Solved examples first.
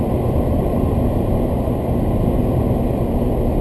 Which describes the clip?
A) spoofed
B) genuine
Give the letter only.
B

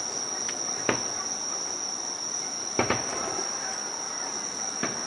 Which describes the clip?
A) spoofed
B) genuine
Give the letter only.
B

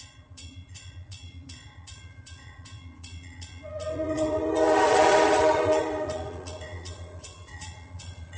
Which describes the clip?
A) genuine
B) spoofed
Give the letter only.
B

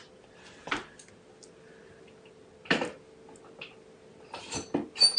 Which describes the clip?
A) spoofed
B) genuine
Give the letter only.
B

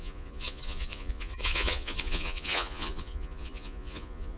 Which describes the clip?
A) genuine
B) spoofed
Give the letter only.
B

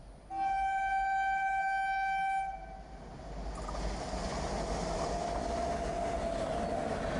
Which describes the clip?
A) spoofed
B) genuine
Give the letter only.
B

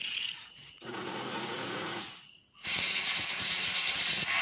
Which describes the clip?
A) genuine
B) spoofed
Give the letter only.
B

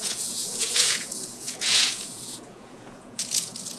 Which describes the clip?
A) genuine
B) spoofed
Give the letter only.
B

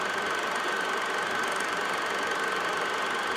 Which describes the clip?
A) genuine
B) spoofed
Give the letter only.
A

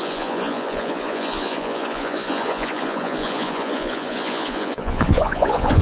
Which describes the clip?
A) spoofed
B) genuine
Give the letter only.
A